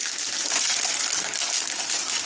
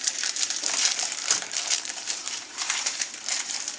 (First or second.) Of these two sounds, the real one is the first